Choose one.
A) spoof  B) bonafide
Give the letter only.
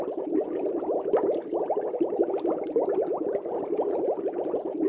B